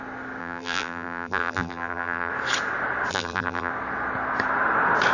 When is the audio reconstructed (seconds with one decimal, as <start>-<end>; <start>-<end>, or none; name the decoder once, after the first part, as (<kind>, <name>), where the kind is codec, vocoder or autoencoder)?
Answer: 0.4-2.3 (vocoder, BigVGAN v2); 3.1-3.7